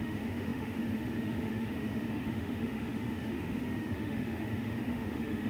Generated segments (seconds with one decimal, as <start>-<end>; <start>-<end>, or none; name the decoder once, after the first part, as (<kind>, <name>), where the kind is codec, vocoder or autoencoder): 0.0-5.5 (autoencoder, DAC-VAE)